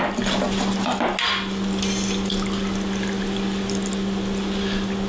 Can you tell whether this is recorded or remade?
recorded